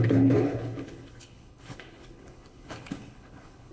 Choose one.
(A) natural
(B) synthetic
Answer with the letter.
B